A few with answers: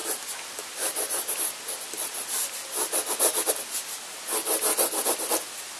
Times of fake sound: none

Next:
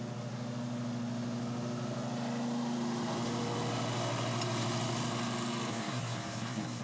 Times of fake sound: 5.7-6.8 (codec, SNAC)

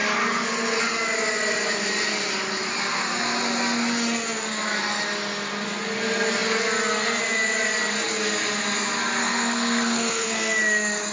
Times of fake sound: 9.2-10.6 (codec, SNAC)

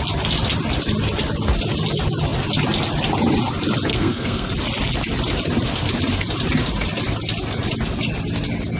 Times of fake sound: 3.9-4.5 (codec, SNAC)

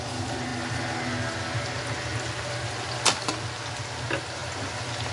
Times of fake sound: none